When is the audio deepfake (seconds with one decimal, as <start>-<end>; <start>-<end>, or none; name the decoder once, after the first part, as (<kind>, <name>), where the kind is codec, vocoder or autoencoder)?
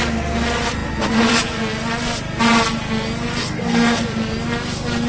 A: 3.4-4.0 (codec, SNAC)